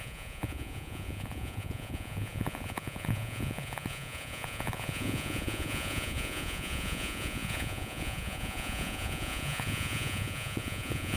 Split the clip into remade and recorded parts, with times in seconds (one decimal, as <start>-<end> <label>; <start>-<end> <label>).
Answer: 0.0-11.2 remade